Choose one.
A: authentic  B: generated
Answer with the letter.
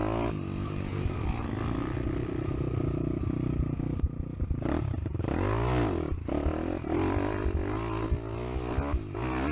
A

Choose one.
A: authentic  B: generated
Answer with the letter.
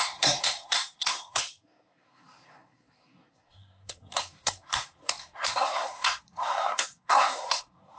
B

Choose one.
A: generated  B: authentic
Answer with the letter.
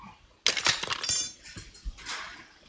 B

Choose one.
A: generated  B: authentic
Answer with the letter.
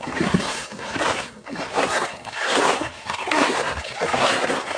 A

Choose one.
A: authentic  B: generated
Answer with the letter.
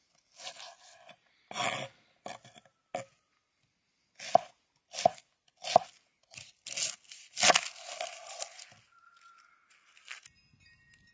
A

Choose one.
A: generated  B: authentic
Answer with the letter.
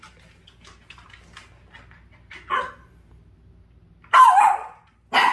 B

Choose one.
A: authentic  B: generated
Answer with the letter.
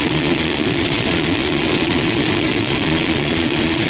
B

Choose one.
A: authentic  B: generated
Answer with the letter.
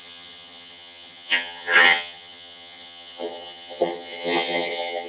B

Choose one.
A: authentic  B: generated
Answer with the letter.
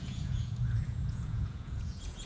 B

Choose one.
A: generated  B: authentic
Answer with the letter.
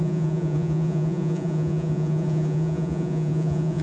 A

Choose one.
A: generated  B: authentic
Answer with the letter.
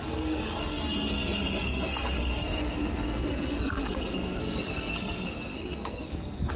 A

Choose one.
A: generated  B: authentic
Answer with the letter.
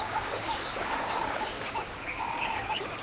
A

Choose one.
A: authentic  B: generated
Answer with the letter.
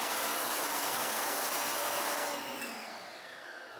B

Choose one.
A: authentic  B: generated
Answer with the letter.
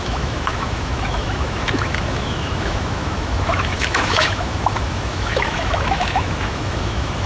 B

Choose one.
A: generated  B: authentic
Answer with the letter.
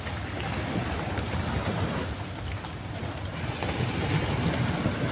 B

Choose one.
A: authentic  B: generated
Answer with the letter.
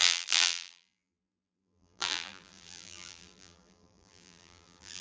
B